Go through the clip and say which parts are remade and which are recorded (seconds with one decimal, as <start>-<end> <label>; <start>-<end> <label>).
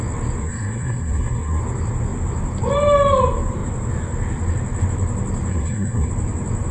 0.0-0.4 recorded; 0.4-1.6 remade; 1.6-5.5 recorded; 5.5-6.1 remade; 6.1-6.7 recorded